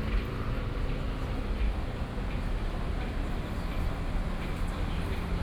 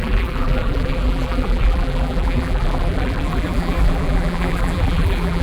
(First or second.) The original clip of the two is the first